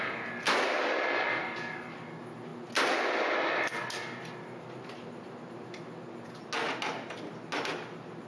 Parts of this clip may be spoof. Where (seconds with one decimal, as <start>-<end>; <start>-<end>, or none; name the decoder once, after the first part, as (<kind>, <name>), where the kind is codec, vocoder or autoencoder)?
none